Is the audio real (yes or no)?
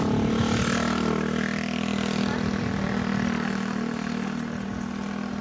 yes